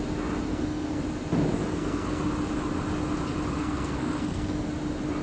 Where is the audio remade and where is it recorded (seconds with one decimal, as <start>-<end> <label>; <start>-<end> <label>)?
0.0-0.5 recorded; 0.5-1.0 remade; 1.0-1.6 recorded; 1.6-2.2 remade; 2.2-3.6 recorded; 3.6-4.7 remade; 4.7-5.2 recorded